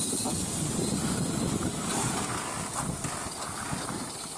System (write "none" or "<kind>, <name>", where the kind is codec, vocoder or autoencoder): none